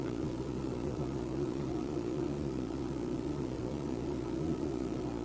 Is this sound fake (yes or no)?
yes